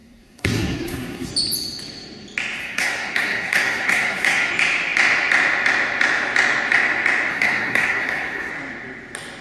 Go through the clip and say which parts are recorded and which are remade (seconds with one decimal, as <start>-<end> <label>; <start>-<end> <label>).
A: 0.0-1.3 remade; 1.3-2.6 recorded; 2.6-4.5 remade; 4.5-7.3 recorded; 7.3-8.5 remade; 8.5-9.4 recorded